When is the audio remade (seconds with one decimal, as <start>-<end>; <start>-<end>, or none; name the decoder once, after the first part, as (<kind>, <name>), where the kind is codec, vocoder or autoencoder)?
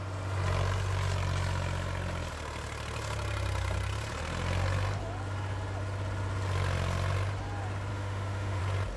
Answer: 7.9-8.6 (autoencoder, DAC-VAE)